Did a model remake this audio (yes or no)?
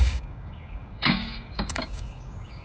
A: yes